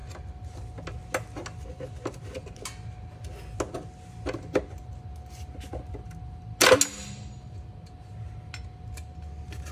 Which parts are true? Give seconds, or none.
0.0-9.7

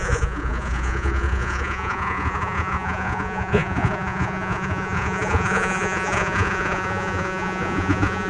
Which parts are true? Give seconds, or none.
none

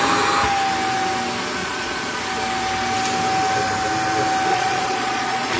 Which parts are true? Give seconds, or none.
0.0-1.6; 2.2-4.5

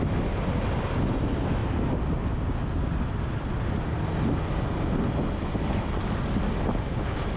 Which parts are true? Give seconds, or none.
0.0-7.4